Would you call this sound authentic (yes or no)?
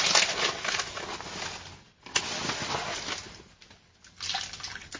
yes